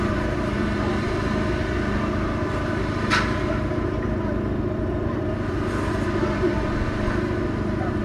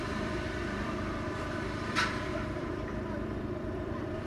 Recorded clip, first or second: first